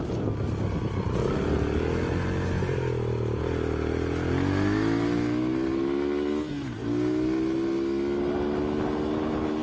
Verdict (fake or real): real